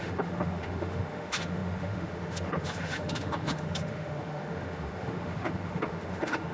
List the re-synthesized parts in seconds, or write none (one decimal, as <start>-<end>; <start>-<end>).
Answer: 0.0-6.5